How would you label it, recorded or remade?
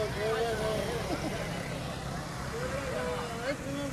recorded